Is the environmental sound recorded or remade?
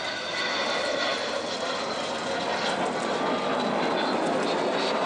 recorded